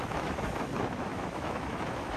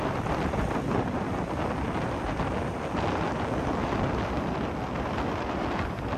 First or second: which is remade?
first